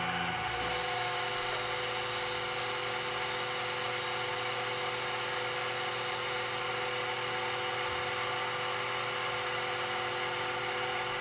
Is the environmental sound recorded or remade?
recorded